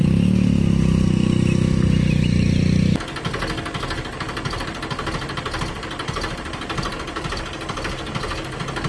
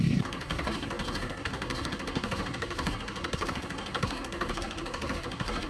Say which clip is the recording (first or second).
first